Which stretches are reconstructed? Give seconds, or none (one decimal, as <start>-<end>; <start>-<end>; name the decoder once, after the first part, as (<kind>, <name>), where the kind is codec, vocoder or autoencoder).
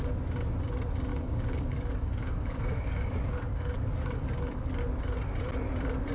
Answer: 1.1-4.8 (codec, DAC)